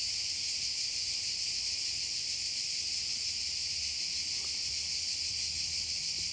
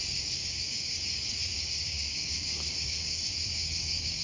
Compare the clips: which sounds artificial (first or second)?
second